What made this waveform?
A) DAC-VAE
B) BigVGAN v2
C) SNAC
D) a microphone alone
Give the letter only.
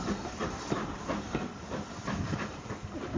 D